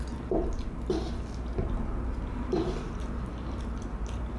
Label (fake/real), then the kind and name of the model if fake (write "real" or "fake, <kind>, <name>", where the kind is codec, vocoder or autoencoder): real